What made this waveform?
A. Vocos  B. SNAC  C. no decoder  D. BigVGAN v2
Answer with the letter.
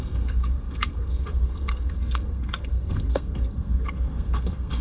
B